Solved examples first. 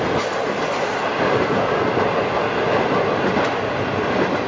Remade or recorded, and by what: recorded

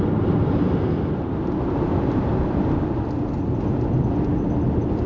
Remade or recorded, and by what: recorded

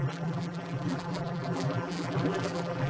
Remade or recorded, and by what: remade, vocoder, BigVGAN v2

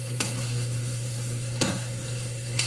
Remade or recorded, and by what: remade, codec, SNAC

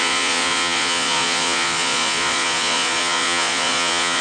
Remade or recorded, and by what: remade, vocoder, Vocos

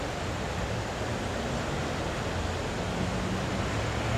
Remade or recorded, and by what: recorded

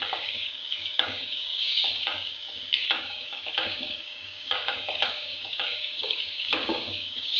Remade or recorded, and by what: remade, codec, DAC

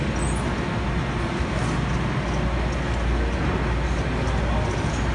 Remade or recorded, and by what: recorded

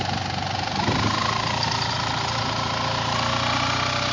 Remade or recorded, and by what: recorded